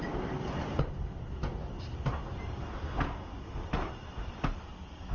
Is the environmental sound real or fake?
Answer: real